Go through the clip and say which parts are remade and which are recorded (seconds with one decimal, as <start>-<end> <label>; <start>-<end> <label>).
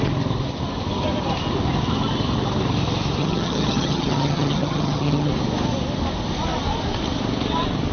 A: 0.0-3.2 recorded; 3.2-5.3 remade; 5.3-7.9 recorded